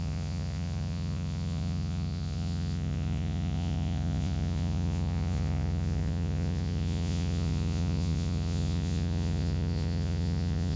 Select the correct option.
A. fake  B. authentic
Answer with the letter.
A